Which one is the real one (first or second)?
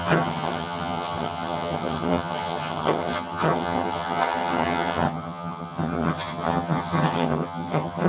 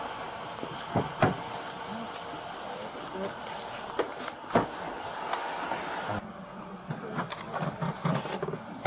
second